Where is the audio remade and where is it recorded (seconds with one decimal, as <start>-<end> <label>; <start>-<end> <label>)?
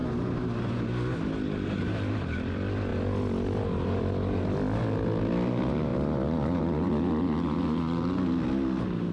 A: 0.0-9.1 recorded